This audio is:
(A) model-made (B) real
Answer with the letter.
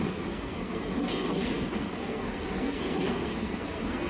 A